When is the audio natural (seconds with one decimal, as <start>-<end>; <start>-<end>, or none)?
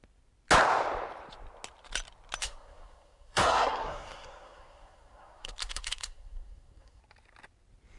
0.0-2.4; 7.0-8.0